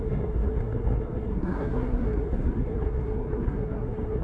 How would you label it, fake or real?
fake